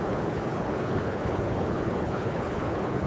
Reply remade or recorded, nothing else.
remade